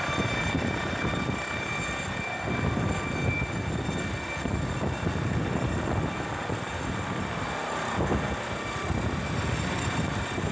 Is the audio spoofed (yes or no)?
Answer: no